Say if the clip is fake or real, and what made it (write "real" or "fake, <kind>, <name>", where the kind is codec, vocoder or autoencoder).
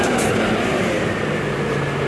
real